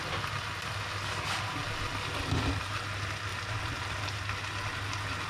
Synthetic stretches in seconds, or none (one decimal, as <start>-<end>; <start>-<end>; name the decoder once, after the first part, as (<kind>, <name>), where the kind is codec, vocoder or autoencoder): 3.3-3.8 (vocoder, BigVGAN v2)